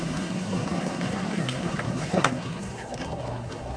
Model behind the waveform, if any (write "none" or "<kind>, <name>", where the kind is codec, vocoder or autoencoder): codec, SNAC